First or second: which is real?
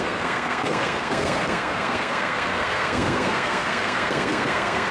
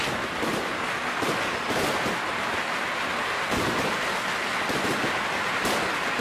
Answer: second